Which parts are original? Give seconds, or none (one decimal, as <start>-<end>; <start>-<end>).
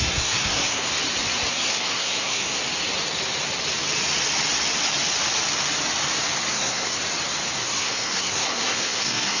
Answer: 0.9-1.5; 2.6-6.5; 7.0-7.6